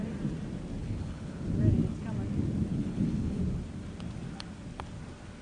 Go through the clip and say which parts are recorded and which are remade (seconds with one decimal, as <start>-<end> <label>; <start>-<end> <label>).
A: 0.0-0.8 recorded; 0.8-1.4 remade; 1.4-2.7 recorded; 2.7-3.4 remade; 3.4-5.4 recorded